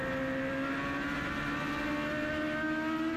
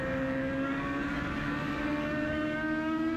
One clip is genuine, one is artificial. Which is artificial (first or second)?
second